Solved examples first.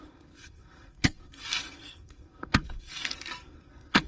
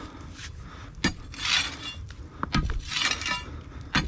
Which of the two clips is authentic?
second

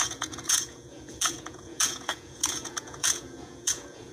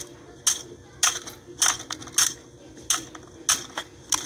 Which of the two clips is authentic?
second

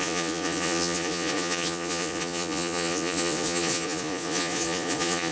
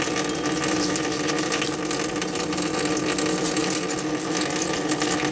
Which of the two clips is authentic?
second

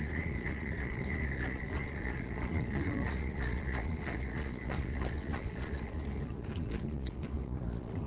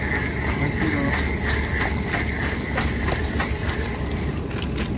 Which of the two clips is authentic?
second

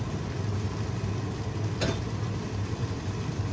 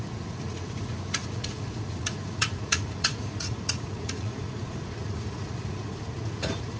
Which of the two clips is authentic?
first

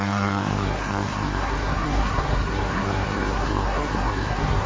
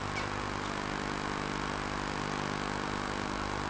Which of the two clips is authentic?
second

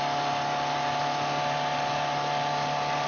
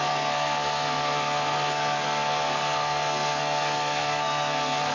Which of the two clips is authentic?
first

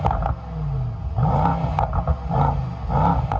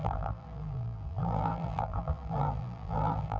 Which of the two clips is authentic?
first